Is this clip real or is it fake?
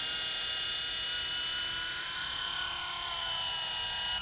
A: real